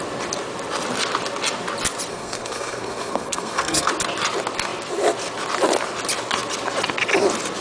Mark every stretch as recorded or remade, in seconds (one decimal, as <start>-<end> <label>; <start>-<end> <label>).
0.0-2.1 recorded; 2.1-3.9 remade; 3.9-7.6 recorded